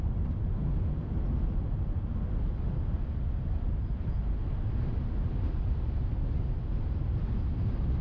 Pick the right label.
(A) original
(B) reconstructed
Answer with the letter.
A